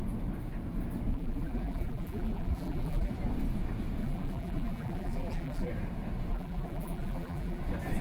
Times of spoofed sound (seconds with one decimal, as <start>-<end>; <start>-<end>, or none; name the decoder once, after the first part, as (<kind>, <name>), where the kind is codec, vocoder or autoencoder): 1.1-3.1 (vocoder, BigVGAN v2); 4.0-5.7; 6.3-7.6